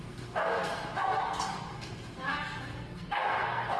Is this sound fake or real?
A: fake